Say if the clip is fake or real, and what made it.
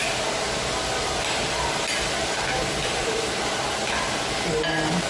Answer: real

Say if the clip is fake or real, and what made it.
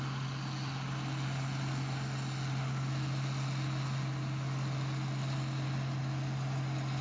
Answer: real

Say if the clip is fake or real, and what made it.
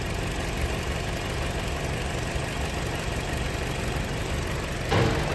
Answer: real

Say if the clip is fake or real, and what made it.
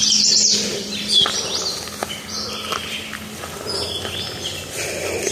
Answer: real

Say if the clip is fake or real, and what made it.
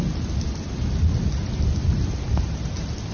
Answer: fake, vocoder, BigVGAN v2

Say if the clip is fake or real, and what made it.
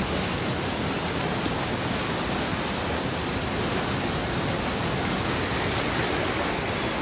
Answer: real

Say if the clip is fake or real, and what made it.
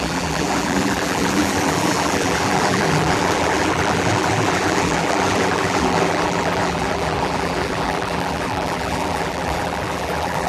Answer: fake, vocoder, BigVGAN v2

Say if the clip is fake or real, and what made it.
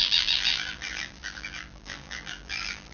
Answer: fake, vocoder, BigVGAN v2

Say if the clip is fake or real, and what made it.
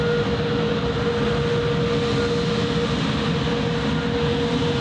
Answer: real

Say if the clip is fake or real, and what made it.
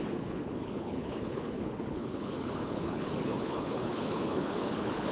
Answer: fake, codec, HILCodec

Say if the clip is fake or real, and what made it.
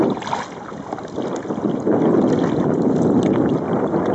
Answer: real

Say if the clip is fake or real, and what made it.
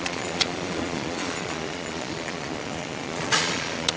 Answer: fake, vocoder, Vocos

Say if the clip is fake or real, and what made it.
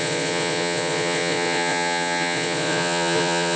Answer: fake, vocoder, Vocos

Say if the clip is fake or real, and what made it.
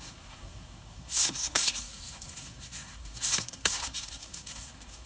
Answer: fake, codec, SNAC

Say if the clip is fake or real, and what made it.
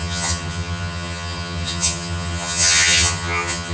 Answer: fake, vocoder, HiFi-GAN